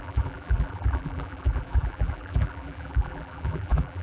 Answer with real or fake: fake